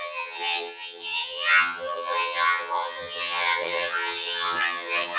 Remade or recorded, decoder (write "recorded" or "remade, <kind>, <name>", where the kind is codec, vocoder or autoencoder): remade, vocoder, HiFi-GAN